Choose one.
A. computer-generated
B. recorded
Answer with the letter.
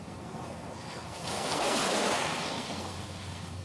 A